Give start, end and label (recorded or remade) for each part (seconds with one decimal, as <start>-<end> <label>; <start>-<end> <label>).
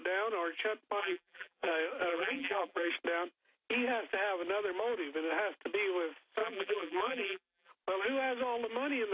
0.0-1.0 recorded; 1.0-1.7 remade; 1.7-2.1 recorded; 2.1-2.9 remade; 2.9-6.4 recorded; 6.4-7.7 remade; 7.7-9.1 recorded